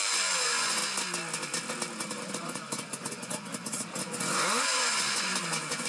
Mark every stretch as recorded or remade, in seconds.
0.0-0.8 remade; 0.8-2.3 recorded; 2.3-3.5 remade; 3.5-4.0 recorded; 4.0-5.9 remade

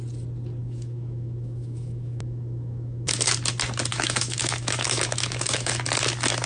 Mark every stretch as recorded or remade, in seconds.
0.0-0.6 recorded; 0.6-3.3 remade; 3.3-3.9 recorded; 3.9-5.7 remade; 5.7-6.5 recorded

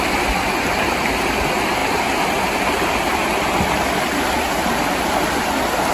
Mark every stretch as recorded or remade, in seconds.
0.0-5.9 recorded

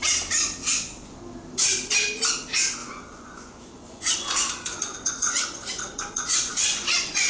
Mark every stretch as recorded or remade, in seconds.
0.0-0.6 recorded; 0.6-1.2 remade; 1.2-2.8 recorded; 2.8-7.3 remade

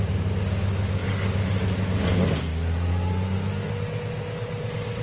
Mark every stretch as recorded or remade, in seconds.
0.0-5.0 recorded

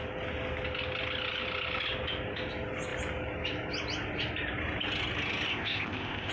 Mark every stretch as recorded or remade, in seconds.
0.0-5.5 recorded; 5.5-6.3 remade

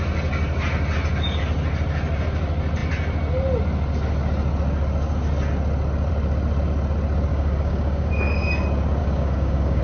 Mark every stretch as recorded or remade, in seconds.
0.0-7.3 recorded; 7.3-8.1 remade; 8.1-9.0 recorded; 9.0-9.8 remade

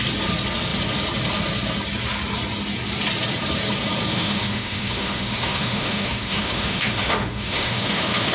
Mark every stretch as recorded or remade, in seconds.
0.0-4.1 recorded; 4.1-8.3 remade